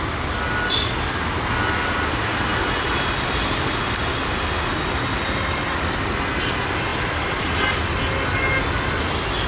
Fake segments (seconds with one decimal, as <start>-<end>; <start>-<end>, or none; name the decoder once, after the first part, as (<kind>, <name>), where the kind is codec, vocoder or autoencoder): 2.5-3.8 (vocoder, BigVGAN v2); 6.9-7.4

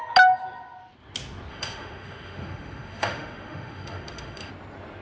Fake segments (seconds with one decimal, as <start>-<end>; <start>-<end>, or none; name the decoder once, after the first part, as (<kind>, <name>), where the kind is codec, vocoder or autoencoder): 1.5-4.5 (autoencoder, DAC-VAE)

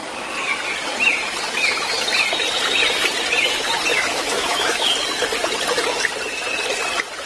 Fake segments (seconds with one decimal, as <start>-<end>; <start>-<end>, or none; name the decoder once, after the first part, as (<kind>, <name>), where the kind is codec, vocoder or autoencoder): 3.9-4.9 (autoencoder, DAC-VAE)

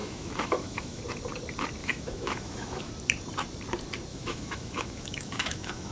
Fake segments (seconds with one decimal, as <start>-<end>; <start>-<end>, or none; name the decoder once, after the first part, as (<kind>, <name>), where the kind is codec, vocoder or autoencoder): 0.0-1.0 (autoencoder, DAC-VAE); 1.8-2.9; 4.1-5.9

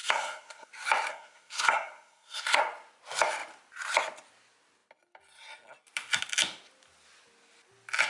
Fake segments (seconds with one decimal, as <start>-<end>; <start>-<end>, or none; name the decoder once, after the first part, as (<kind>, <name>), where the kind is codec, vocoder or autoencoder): 0.0-0.7 (codec, SNAC); 1.1-2.6

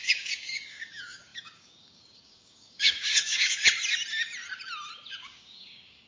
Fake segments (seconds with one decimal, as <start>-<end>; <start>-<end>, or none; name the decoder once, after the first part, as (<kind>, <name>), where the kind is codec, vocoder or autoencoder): 0.0-3.6 (codec, DAC); 5.1-6.1

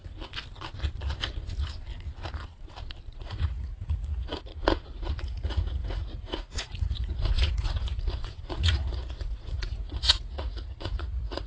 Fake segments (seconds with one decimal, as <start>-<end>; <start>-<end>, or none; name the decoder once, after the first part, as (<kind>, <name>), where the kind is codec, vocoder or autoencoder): 3.1-4.5 (vocoder, Vocos); 5.2-11.5

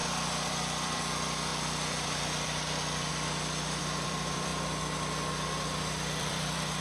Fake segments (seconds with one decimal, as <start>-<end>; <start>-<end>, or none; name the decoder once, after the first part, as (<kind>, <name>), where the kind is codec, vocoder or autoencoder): 0.5-3.1 (vocoder, BigVGAN v2); 3.8-4.5; 6.2-6.8